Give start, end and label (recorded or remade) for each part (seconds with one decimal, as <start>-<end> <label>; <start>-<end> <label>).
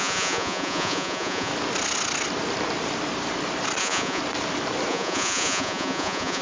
0.0-1.5 remade; 1.5-3.8 recorded; 3.8-4.2 remade; 4.2-4.9 recorded; 4.9-6.4 remade